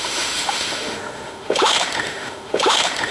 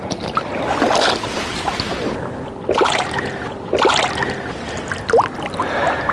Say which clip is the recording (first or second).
second